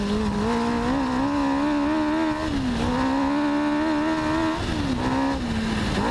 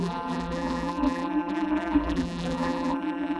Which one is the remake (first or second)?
second